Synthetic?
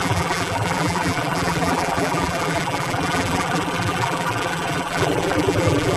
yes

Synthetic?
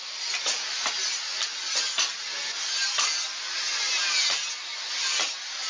no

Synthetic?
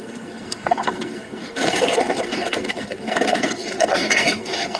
yes